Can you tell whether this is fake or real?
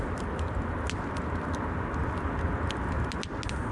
real